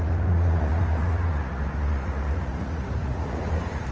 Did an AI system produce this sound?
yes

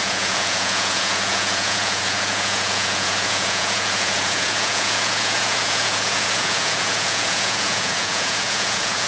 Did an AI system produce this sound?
yes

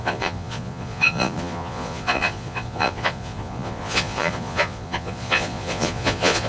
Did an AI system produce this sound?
yes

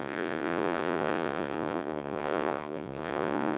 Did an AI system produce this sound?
yes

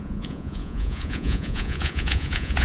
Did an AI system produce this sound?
yes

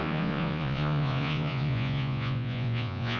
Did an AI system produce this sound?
yes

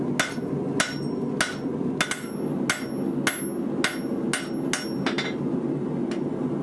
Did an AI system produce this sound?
no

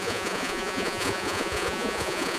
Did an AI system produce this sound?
yes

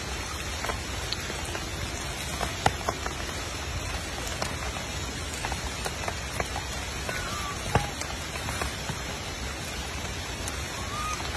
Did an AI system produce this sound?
no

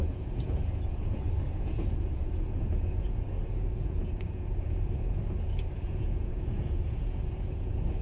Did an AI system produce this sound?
yes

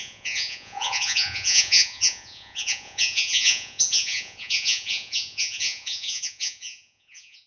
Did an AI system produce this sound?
yes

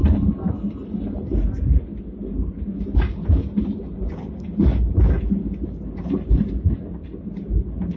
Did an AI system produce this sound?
no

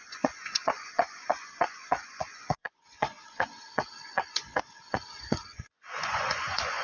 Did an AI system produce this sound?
yes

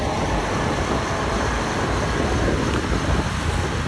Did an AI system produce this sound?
no